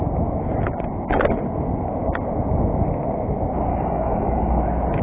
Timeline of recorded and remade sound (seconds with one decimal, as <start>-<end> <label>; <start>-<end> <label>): 0.0-3.7 recorded; 3.7-4.6 remade; 4.6-5.0 recorded